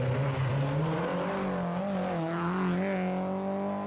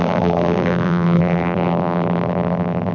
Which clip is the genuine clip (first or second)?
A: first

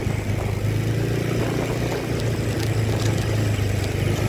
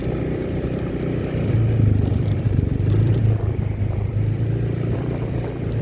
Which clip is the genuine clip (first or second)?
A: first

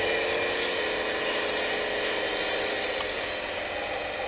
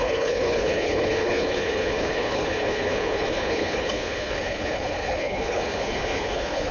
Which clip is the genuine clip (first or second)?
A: first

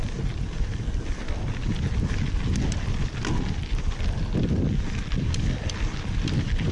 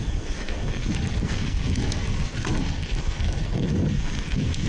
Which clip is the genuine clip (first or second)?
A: first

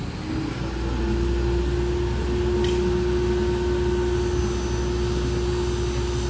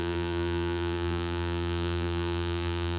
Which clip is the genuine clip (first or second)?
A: first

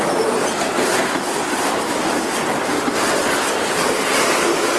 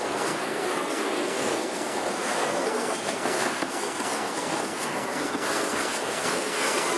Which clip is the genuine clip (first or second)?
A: first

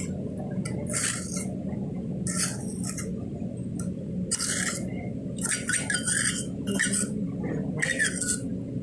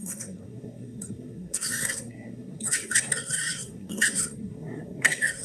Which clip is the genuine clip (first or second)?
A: first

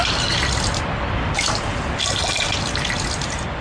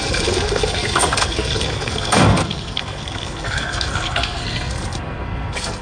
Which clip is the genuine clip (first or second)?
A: first